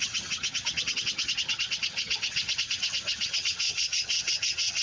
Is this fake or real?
fake